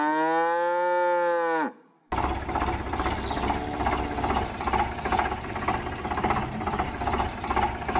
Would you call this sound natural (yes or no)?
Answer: yes